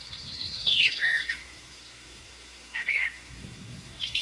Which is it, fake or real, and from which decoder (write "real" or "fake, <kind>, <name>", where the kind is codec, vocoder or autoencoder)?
fake, codec, SNAC